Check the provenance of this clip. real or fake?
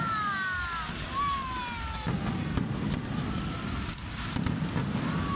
real